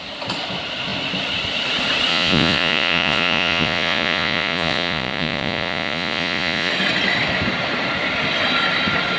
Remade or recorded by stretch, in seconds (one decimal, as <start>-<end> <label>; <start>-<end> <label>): 0.0-2.1 recorded; 2.1-6.7 remade; 6.7-9.2 recorded